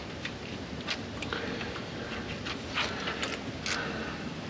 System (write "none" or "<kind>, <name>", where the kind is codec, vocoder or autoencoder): none